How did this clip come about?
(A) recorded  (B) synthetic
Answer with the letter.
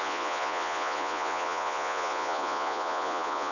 B